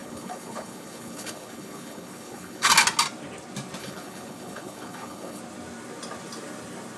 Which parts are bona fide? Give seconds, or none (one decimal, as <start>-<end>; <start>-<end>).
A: 2.7-3.8; 5.4-7.0